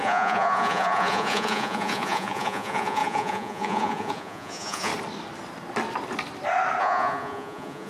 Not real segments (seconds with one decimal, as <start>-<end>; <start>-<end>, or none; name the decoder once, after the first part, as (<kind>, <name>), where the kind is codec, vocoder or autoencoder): 0.0-4.9 (vocoder, Vocos); 6.8-7.9